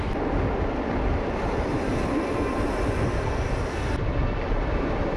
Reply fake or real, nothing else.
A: fake